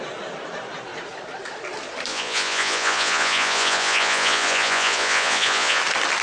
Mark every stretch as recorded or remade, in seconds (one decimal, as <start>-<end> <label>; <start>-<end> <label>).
0.0-2.1 recorded; 2.1-5.8 remade; 5.8-6.2 recorded